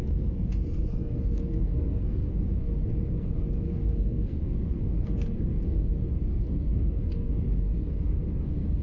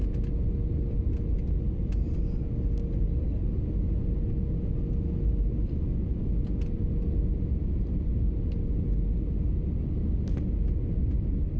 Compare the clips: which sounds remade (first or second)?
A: first